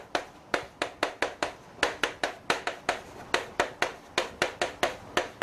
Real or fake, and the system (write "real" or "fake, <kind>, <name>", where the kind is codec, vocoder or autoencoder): real